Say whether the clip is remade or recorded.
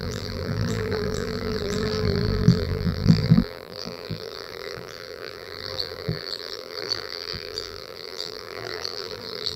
remade